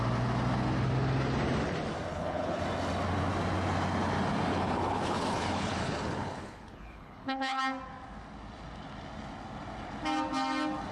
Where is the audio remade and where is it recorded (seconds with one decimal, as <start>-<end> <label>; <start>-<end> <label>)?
0.0-2.1 recorded; 2.1-2.6 remade; 2.6-4.5 recorded; 4.5-7.6 remade; 7.6-10.9 recorded